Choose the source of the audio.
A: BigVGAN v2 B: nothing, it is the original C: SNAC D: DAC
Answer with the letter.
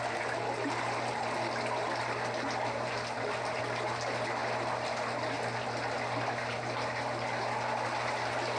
B